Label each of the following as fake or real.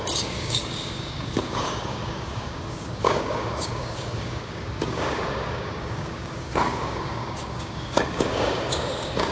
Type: fake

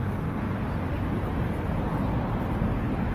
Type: fake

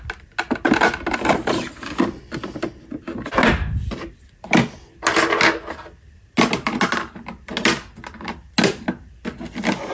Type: real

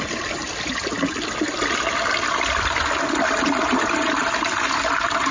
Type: real